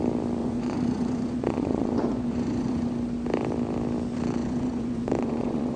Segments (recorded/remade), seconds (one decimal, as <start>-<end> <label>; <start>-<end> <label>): 0.0-0.4 recorded; 0.4-2.9 remade; 2.9-4.4 recorded; 4.4-5.8 remade